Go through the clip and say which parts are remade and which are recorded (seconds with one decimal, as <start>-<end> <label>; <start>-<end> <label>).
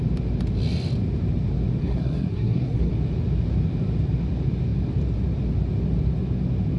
0.0-1.8 recorded; 1.8-2.9 remade; 2.9-6.8 recorded